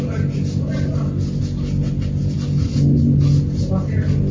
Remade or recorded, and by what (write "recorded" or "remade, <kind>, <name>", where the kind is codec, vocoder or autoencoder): recorded